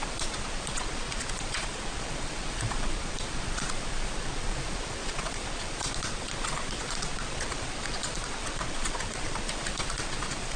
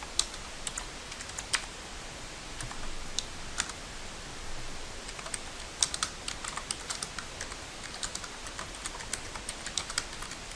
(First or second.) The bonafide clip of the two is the second